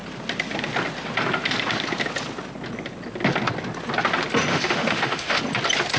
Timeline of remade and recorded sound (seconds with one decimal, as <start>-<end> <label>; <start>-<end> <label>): 0.0-4.5 recorded; 4.5-5.4 remade; 5.4-6.0 recorded